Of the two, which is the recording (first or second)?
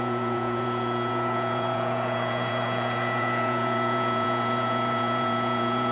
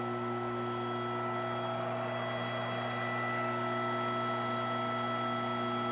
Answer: second